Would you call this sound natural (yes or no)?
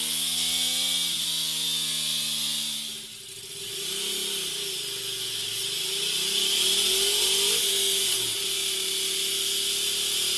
yes